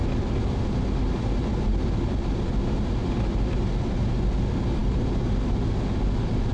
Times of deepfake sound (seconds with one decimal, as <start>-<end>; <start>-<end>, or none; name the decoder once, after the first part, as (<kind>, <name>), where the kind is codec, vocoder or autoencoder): none